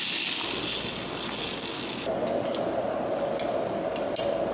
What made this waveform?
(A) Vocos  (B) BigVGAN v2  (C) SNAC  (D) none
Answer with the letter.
D